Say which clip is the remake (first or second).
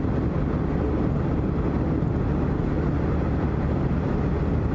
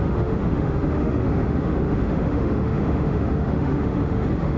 second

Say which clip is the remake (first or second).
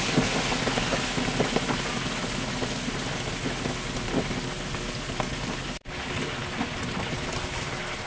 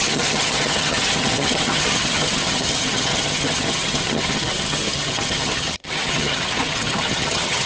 second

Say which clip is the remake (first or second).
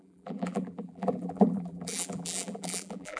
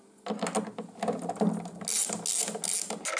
first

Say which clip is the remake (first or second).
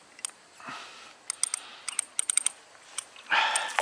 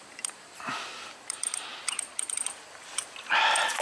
second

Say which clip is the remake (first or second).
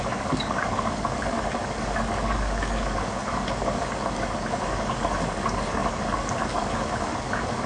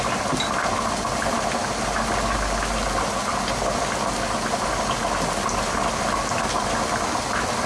first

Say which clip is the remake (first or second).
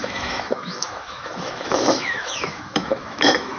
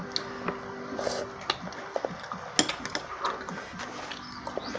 first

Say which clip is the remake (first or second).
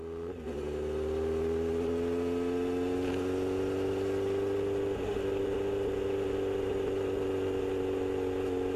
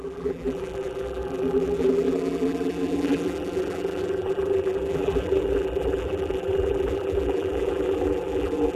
second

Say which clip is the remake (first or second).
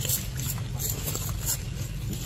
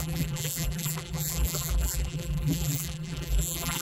second